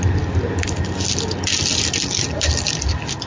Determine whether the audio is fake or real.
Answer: real